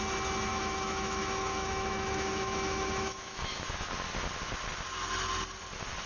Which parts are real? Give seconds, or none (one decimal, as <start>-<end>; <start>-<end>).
0.0-0.5; 3.9-6.1